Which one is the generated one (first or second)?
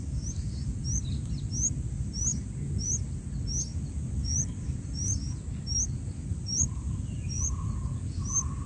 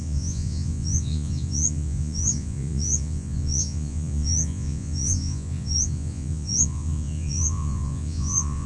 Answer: second